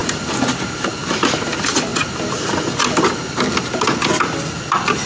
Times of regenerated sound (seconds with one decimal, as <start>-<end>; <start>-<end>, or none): none